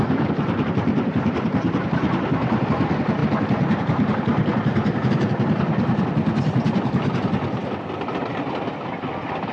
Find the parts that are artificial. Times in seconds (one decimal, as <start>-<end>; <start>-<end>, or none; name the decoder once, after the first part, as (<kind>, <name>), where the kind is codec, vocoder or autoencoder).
0.0-9.5 (vocoder, BigVGAN v2)